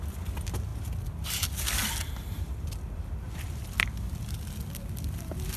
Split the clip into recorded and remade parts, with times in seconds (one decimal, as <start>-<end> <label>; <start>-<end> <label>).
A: 0.0-5.6 recorded